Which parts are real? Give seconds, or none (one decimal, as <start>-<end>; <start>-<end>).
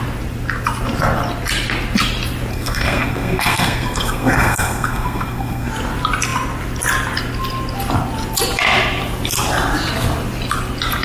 0.0-2.5; 5.7-11.0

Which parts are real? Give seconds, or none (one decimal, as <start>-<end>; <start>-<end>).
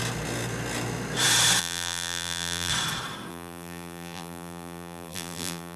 0.0-1.6; 2.7-3.3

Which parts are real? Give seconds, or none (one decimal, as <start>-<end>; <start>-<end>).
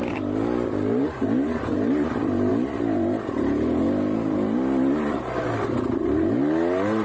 0.0-7.0